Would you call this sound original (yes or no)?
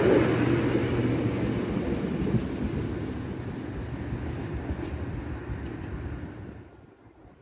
yes